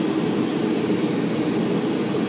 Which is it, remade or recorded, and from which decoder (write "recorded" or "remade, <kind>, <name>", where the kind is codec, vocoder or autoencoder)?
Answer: recorded